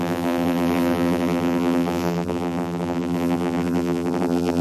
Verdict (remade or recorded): remade